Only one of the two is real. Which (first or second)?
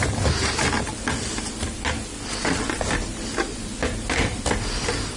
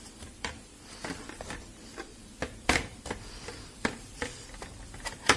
first